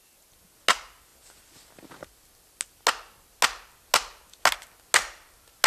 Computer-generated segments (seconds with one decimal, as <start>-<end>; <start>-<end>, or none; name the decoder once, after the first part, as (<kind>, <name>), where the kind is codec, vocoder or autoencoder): none